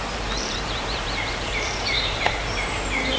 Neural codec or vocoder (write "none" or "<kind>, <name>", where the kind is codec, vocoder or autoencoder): vocoder, BigVGAN v2